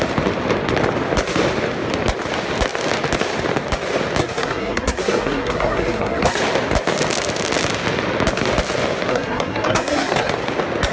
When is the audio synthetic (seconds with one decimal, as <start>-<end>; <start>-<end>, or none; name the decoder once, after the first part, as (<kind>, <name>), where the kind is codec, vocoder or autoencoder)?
4.2-6.4 (codec, SNAC); 9.1-10.3